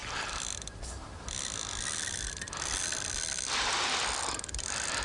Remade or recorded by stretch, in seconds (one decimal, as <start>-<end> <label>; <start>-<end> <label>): 0.0-5.0 recorded